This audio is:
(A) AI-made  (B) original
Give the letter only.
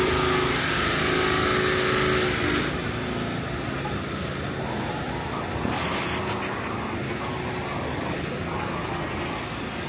B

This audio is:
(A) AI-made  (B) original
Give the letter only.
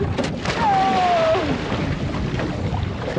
B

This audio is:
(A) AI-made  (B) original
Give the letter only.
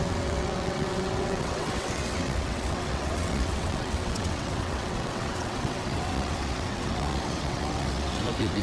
A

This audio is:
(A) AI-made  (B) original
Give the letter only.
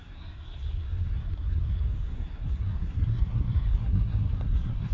A